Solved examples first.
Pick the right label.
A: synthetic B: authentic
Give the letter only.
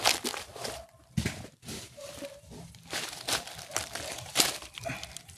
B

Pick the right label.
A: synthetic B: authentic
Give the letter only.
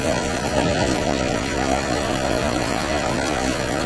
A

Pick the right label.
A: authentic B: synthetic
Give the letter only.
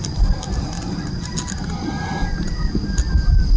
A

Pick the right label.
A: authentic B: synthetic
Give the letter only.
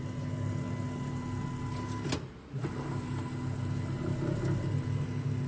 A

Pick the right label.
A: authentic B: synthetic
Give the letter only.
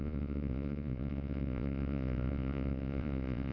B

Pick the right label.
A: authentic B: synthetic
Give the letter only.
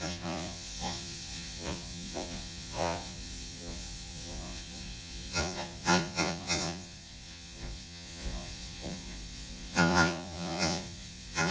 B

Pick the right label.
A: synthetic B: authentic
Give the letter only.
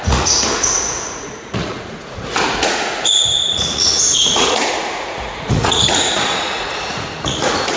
A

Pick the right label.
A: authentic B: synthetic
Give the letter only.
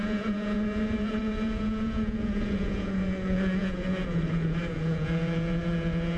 B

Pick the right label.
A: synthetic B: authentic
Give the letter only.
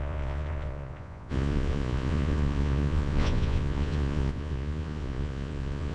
A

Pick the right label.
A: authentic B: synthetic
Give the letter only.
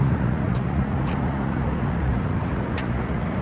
B